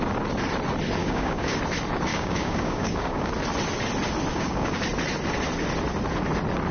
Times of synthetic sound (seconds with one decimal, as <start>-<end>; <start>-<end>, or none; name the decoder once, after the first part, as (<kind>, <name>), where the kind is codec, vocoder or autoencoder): 1.0-1.6 (codec, DAC); 2.1-3.3; 4.3-4.8